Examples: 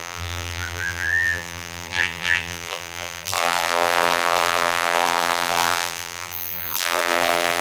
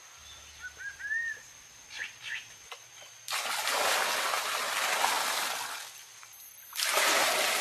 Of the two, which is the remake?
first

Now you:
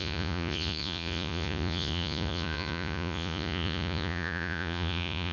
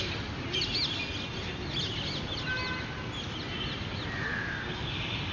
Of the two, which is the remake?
first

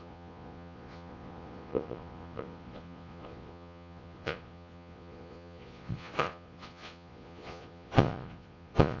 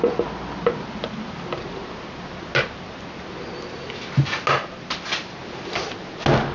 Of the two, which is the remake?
first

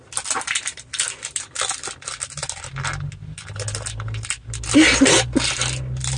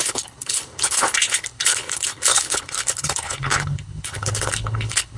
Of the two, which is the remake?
second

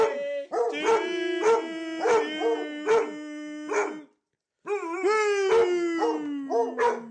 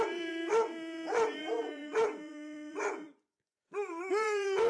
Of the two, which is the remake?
second